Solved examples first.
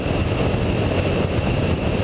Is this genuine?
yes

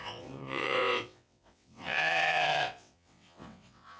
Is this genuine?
no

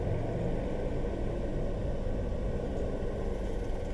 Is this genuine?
yes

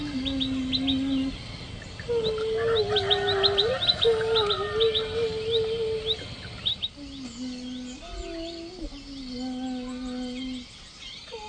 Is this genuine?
yes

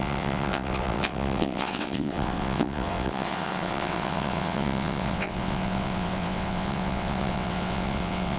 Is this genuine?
no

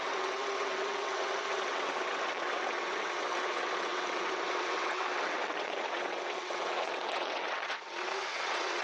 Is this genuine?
no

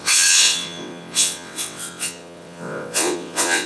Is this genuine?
no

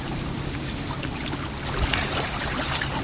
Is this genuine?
yes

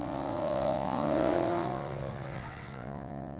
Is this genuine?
no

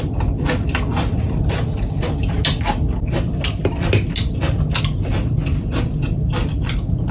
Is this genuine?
yes